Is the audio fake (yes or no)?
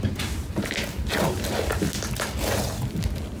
no